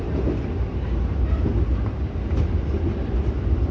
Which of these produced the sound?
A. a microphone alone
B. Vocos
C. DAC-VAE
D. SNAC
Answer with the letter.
A